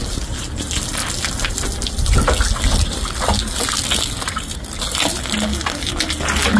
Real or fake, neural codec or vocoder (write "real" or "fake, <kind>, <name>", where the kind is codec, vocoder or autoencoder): real